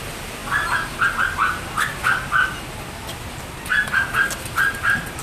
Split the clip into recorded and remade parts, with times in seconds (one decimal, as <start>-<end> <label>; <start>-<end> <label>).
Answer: 0.0-5.2 recorded